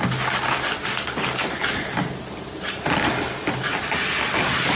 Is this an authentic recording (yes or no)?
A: yes